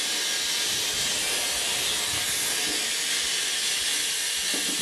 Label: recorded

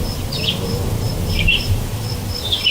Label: recorded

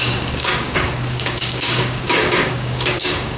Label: remade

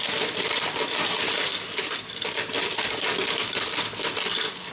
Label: recorded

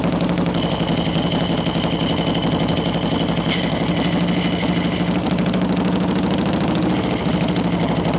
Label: recorded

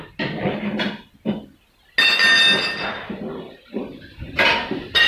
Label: recorded